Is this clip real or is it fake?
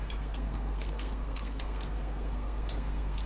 fake